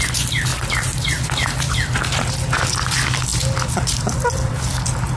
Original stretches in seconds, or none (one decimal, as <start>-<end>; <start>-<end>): 0.0-5.2